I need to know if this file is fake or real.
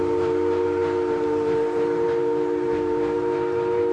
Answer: real